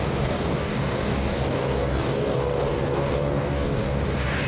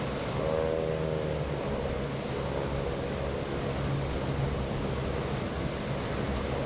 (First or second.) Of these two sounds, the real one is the second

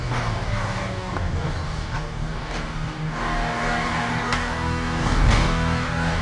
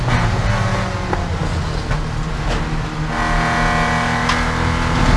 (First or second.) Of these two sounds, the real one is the second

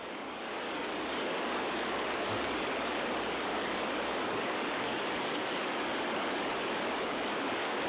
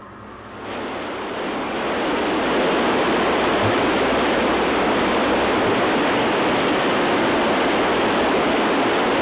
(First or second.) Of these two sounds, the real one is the second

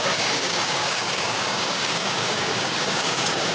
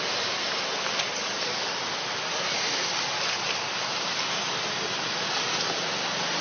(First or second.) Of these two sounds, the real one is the second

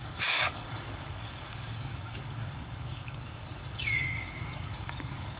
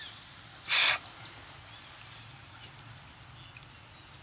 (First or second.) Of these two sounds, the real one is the second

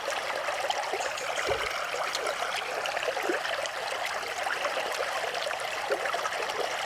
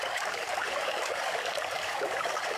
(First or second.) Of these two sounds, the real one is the first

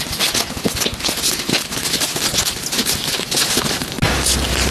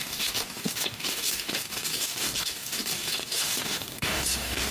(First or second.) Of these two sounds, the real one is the first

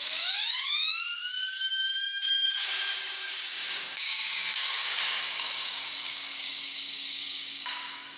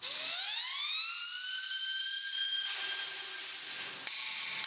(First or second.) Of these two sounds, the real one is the second